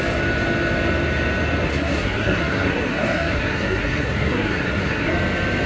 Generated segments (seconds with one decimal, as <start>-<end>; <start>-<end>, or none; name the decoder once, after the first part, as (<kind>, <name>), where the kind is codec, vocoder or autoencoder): 1.7-5.1 (codec, SNAC)